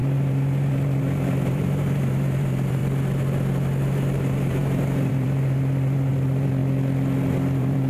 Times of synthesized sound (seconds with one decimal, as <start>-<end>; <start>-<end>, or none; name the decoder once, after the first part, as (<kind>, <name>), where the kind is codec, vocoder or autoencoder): 0.0-2.8 (vocoder, BigVGAN v2); 3.8-6.6; 7.3-7.9